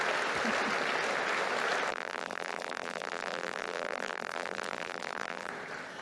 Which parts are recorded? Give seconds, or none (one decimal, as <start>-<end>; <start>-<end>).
0.0-1.9; 5.5-6.0